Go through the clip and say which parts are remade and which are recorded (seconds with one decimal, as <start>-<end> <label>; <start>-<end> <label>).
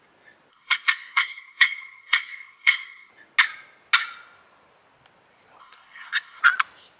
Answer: 0.0-0.5 recorded; 0.5-3.1 remade; 3.1-5.6 recorded; 5.6-6.4 remade; 6.4-7.0 recorded